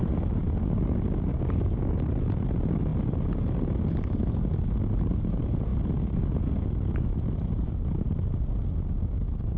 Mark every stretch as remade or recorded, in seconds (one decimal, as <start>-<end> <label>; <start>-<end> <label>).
0.0-1.3 recorded; 1.3-2.0 remade; 2.0-9.6 recorded